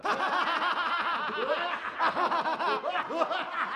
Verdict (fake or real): real